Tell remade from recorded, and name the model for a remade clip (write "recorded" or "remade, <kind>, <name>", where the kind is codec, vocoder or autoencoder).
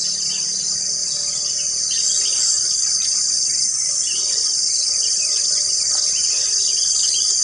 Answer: recorded